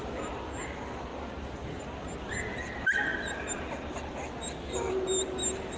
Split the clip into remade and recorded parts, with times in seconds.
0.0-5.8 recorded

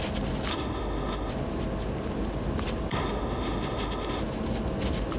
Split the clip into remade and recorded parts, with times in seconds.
0.0-0.5 recorded; 0.5-1.3 remade; 1.3-2.9 recorded; 2.9-4.2 remade; 4.2-5.2 recorded